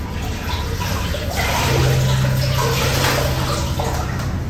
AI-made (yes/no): no